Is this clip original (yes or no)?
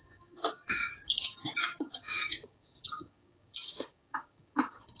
no